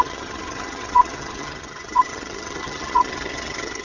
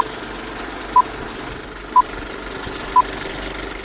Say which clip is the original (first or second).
second